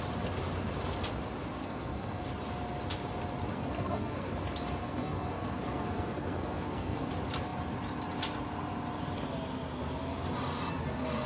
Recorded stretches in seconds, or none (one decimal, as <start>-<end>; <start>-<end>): 0.0-1.6; 2.2-3.5; 4.3-4.8; 7.1-11.3